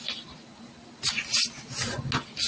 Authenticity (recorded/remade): recorded